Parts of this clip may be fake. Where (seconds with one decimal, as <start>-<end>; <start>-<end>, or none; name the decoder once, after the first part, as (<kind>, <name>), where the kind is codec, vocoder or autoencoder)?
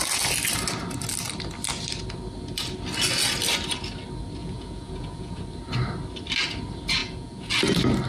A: 4.4-5.4 (vocoder, Vocos); 7.0-7.5